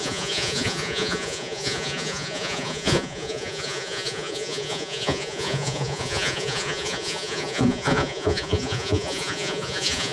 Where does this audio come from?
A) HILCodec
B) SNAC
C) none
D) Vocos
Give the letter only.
D